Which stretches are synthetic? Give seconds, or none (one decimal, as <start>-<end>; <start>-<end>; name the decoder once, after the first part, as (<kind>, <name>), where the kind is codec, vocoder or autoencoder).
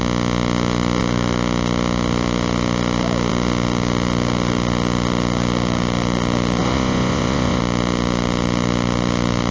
6.6-7.6 (vocoder, Vocos)